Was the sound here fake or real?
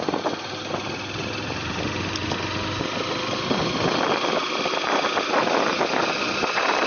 real